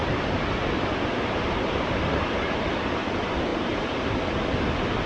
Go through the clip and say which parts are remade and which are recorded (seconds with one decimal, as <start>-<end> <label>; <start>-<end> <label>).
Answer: 0.0-2.9 remade; 2.9-3.5 recorded; 3.5-4.2 remade; 4.2-5.1 recorded